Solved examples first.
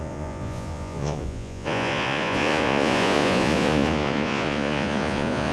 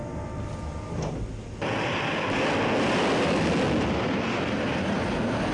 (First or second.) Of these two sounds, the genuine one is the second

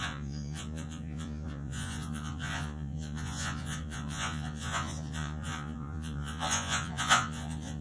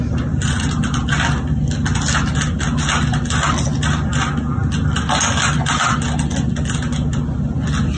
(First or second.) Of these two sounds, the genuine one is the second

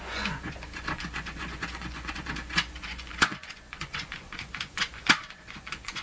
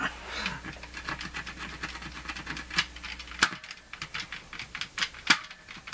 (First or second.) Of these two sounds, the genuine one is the second